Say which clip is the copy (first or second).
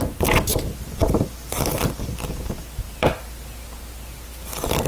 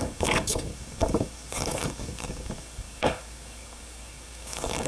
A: second